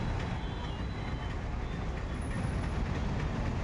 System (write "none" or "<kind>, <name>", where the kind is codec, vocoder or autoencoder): none